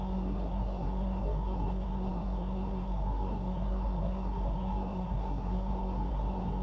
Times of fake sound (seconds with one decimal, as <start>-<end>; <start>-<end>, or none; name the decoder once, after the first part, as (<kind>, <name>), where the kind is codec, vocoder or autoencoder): 0.0-6.6 (codec, SNAC)